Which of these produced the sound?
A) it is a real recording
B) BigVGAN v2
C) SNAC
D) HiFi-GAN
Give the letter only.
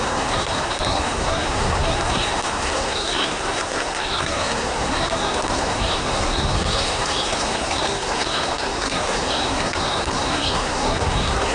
C